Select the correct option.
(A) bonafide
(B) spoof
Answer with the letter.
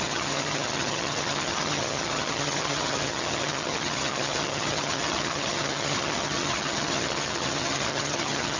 B